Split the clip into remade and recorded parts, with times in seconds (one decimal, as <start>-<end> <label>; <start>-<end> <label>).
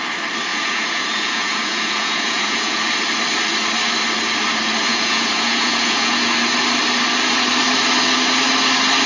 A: 0.0-0.5 recorded; 0.5-2.8 remade; 2.8-4.9 recorded; 4.9-6.3 remade; 6.3-9.1 recorded